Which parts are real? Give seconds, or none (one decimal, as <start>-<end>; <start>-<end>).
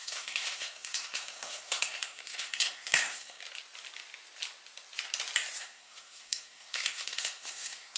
3.4-5.6